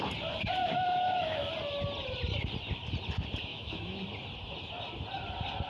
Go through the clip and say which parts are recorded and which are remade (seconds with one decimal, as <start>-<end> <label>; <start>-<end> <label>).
0.0-0.6 recorded; 0.6-1.5 remade; 1.5-3.5 recorded; 3.5-4.0 remade; 4.0-5.7 recorded